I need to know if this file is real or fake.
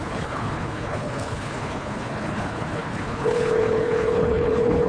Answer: fake